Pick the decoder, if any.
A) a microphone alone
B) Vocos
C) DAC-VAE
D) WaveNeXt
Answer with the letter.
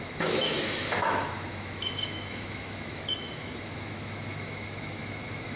C